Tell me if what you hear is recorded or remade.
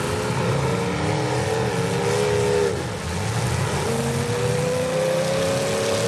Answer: recorded